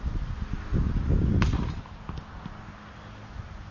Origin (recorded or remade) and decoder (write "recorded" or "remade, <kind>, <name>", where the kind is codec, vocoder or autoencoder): recorded